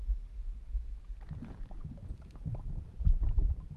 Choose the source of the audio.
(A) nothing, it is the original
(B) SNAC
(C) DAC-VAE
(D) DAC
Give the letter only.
A